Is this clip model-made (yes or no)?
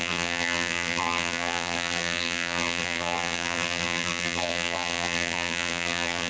yes